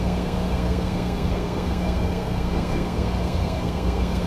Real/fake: fake